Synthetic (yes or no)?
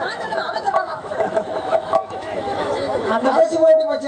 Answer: yes